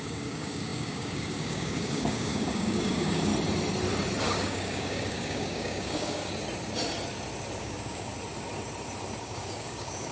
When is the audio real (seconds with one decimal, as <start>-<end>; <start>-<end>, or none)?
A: 3.3-4.2; 6.2-7.6; 8.1-9.2

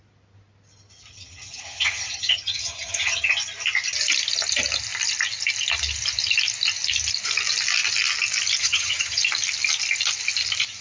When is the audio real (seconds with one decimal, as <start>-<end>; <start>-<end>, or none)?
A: 0.0-1.1; 3.3-8.6; 9.2-10.8